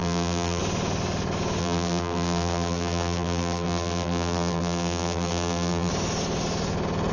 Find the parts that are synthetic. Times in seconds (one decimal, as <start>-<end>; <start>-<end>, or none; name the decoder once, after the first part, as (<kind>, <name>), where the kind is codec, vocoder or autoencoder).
0.0-0.6 (vocoder, BigVGAN v2); 1.6-5.9